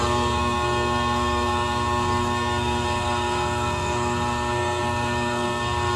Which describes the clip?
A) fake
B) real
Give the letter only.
A